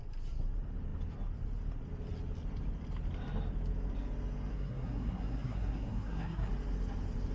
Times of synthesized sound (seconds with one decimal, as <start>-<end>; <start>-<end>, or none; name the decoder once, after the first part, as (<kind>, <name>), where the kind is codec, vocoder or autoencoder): 4.5-6.5 (codec, SNAC)